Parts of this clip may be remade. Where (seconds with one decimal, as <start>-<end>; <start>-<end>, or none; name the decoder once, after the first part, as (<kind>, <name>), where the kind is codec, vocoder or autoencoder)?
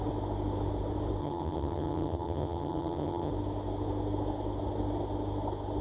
1.2-3.3 (vocoder, HiFi-GAN)